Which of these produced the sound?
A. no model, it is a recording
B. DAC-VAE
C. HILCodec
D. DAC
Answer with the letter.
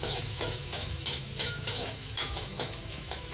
B